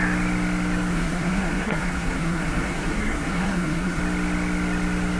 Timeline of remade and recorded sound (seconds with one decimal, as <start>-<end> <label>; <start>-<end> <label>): 0.0-0.9 recorded; 0.9-4.0 remade; 4.0-5.2 recorded